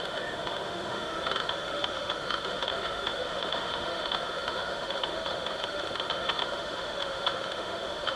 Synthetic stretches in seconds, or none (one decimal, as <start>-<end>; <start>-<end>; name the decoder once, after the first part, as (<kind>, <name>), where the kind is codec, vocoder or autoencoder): 0.0-8.2 (autoencoder, DAC-VAE)